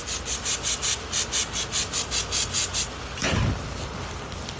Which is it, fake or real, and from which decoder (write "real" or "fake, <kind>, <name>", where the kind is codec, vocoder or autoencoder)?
real